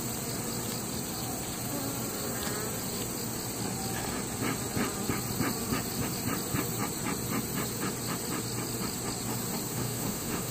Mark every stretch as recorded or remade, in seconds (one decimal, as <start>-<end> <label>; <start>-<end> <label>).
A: 0.0-9.7 recorded; 9.7-10.5 remade